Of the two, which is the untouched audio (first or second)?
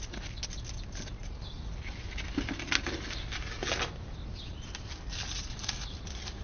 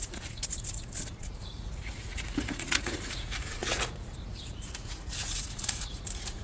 first